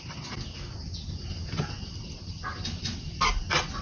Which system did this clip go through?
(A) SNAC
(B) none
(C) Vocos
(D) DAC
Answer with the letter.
B